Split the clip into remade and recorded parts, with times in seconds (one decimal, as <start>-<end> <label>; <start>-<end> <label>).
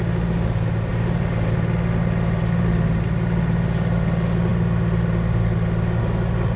0.0-6.6 recorded